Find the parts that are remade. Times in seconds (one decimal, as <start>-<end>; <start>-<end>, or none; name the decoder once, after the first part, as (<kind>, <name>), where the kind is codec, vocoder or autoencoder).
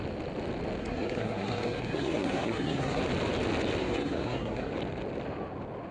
0.8-3.0 (codec, SNAC); 3.8-4.7